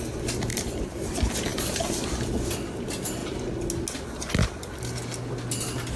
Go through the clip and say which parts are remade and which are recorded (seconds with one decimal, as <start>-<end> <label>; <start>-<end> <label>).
0.0-0.5 recorded; 0.5-1.1 remade; 1.1-1.5 recorded; 1.5-2.1 remade; 2.1-6.0 recorded